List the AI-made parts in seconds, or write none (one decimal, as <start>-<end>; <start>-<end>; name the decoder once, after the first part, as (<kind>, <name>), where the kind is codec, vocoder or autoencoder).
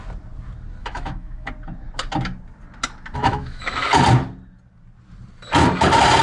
0.8-1.5 (autoencoder, DAC-VAE); 3.2-3.9